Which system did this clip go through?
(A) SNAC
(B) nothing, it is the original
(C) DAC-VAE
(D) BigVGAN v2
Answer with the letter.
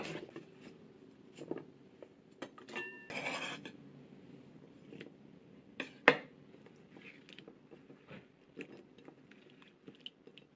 B